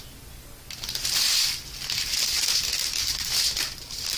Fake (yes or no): no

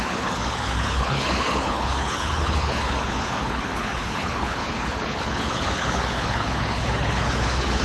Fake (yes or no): yes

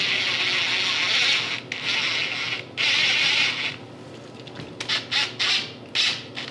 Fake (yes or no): no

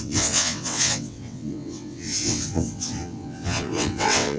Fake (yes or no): yes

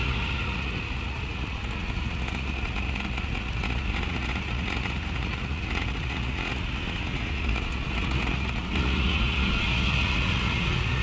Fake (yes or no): yes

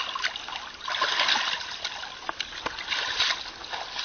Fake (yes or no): no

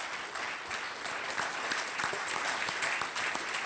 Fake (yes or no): no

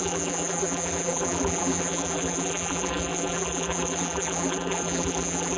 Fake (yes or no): yes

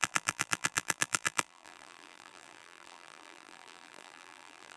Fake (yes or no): yes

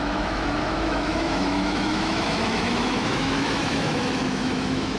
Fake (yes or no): yes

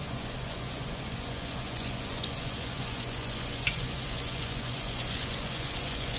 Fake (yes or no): yes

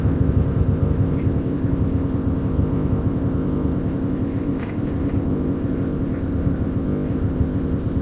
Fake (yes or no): yes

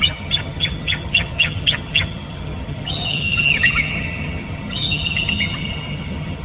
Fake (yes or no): yes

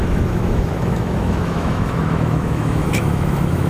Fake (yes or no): yes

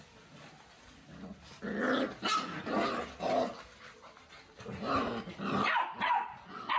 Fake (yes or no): no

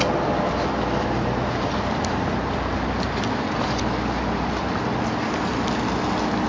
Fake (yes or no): no